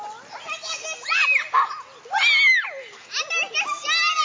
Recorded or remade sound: recorded